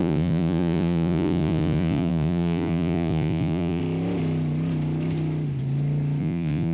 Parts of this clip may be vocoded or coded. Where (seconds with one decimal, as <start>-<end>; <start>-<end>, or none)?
0.0-3.8; 6.2-6.7